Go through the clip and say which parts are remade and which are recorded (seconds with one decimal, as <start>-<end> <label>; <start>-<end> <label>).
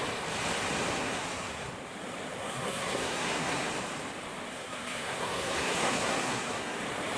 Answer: 0.0-0.9 recorded; 0.9-1.7 remade; 1.7-2.4 recorded; 2.4-3.7 remade; 3.7-4.5 recorded; 4.5-6.8 remade; 6.8-7.2 recorded